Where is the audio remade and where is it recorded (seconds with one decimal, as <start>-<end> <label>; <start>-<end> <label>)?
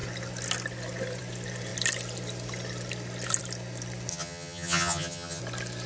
0.0-4.1 recorded; 4.1-5.4 remade; 5.4-5.9 recorded